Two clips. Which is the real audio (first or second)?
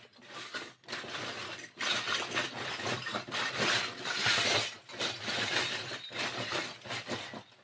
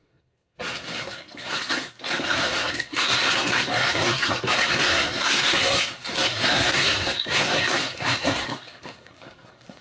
first